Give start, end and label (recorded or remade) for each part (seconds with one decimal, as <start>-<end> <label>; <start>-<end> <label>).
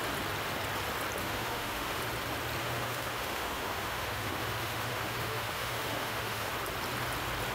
0.0-1.2 recorded; 1.2-2.0 remade; 2.0-2.6 recorded; 2.6-6.5 remade; 6.5-7.5 recorded